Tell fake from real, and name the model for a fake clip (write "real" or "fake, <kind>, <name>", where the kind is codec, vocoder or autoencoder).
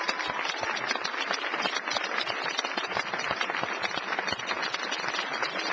real